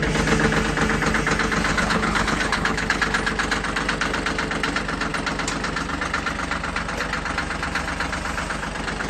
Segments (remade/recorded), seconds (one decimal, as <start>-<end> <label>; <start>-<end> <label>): 0.0-1.7 recorded; 1.7-3.0 remade; 3.0-9.1 recorded